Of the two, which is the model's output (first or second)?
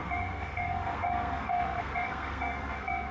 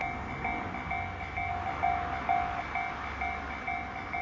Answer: first